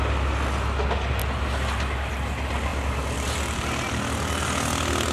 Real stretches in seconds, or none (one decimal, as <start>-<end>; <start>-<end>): 0.0-5.1